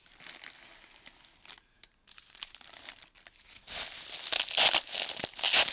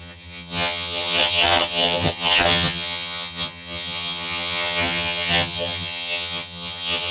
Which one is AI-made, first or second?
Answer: second